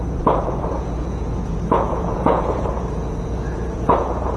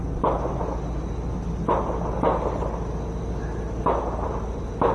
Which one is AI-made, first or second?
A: first